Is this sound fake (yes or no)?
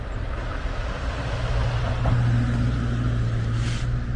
no